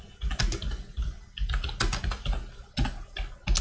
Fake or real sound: real